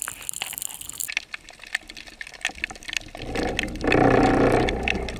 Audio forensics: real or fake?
real